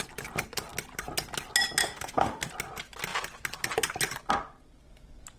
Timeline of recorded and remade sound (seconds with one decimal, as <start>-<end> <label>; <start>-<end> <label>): 0.0-1.8 recorded; 1.8-2.5 remade; 2.5-5.4 recorded